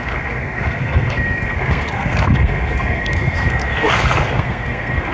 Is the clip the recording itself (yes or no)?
no